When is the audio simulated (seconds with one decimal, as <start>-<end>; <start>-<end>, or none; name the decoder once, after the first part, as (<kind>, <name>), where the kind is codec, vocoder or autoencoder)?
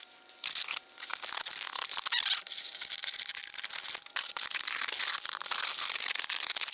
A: none